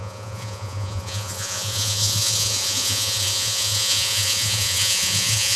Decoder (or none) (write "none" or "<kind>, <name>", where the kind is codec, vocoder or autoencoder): vocoder, Vocos